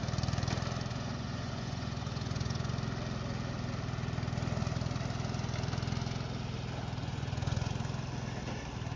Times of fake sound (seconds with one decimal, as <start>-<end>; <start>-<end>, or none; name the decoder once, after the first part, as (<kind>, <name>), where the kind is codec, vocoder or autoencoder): 0.9-2.7 (vocoder, Vocos); 7.0-7.7